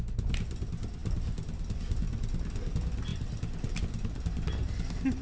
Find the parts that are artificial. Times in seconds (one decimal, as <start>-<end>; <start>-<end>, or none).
3.1-3.8